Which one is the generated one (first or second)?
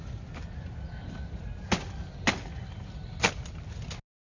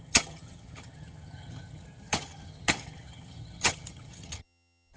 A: second